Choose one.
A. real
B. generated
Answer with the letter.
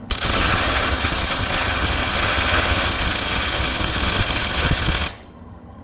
B